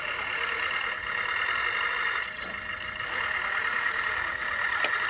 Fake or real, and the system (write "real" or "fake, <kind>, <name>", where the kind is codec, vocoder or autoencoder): real